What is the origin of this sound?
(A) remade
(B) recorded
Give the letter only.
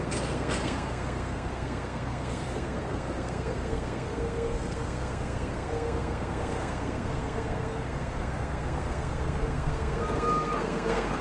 A